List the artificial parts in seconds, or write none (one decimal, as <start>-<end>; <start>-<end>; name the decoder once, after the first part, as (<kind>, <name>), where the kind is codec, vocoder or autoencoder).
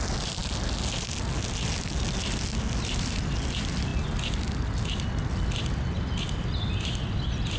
none